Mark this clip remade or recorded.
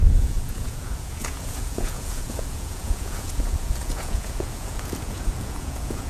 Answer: remade